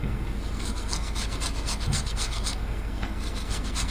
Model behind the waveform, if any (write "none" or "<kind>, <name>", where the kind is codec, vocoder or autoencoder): codec, SNAC